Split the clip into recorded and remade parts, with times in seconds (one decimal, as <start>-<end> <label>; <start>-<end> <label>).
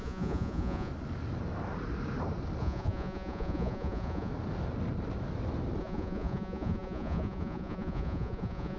0.0-0.9 remade; 0.9-2.6 recorded; 2.6-4.3 remade; 4.3-5.8 recorded; 5.8-8.8 remade